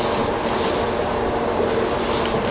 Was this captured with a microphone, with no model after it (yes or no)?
yes